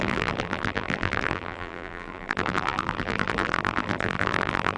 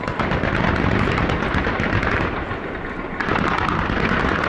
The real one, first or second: second